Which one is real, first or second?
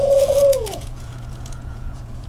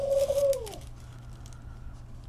second